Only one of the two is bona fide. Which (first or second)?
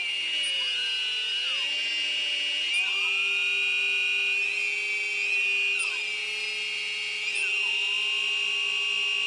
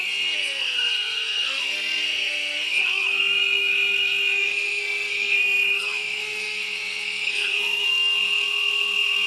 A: first